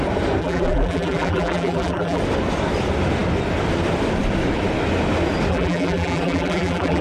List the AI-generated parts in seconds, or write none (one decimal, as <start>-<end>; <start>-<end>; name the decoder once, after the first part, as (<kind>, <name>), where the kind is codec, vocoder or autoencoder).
0.4-2.2 (vocoder, BigVGAN v2); 5.5-7.0